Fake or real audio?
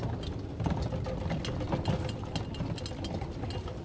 real